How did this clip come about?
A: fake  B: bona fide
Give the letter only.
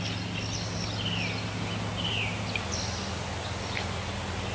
B